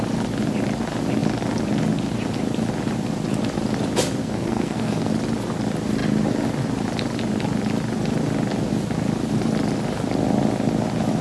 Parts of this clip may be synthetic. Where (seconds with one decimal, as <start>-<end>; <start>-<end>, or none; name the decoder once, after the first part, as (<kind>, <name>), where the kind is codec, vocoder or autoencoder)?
4.2-5.1 (codec, SNAC)